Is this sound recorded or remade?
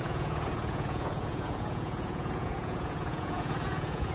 remade